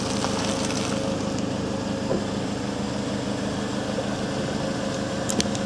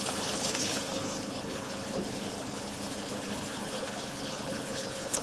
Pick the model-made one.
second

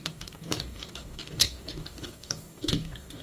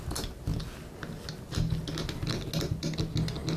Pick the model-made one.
first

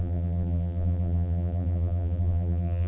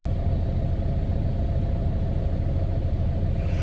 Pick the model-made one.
first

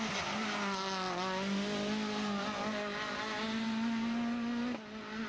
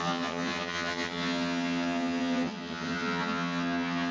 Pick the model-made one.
second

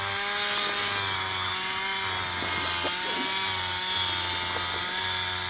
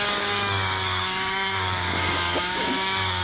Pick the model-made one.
second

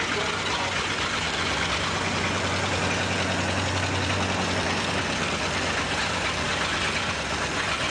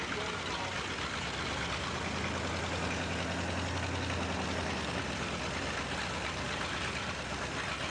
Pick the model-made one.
first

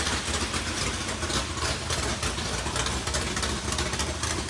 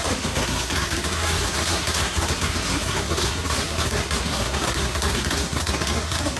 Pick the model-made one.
second